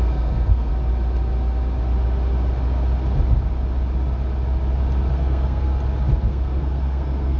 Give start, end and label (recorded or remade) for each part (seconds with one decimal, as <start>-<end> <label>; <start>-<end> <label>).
0.0-0.7 remade; 0.7-5.1 recorded; 5.1-5.7 remade; 5.7-6.3 recorded; 6.3-7.4 remade